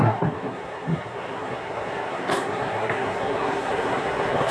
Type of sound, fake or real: fake